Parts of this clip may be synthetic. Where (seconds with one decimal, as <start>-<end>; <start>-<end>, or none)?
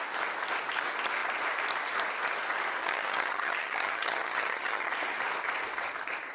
2.8-4.9